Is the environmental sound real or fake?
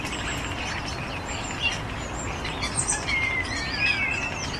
real